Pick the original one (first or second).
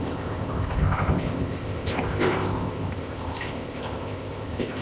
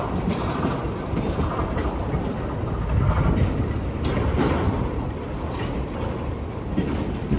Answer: second